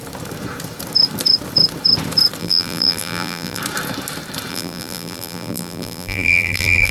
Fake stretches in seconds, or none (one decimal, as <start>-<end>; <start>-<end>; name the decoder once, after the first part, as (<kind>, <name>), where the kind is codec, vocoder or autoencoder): 2.4-3.6 (vocoder, BigVGAN v2); 4.5-6.9